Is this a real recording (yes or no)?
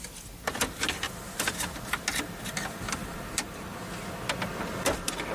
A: yes